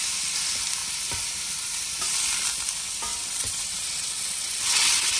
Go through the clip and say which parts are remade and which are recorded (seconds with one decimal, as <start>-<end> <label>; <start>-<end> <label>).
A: 0.0-3.1 recorded; 3.1-5.2 remade